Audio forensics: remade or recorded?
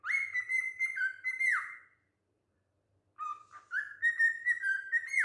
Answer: remade